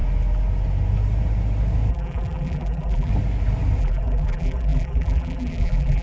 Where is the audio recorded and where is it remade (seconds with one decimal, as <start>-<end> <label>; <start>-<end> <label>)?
0.0-1.9 recorded; 1.9-3.1 remade; 3.1-3.8 recorded; 3.8-6.0 remade